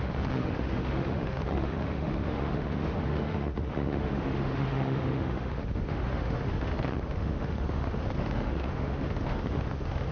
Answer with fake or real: fake